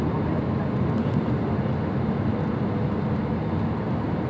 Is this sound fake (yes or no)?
no